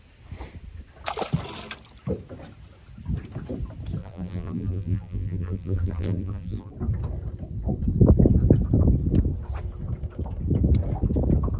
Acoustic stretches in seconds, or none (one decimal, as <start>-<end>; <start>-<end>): 0.0-4.0; 6.7-11.6